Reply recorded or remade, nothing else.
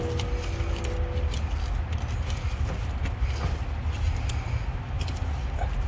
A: recorded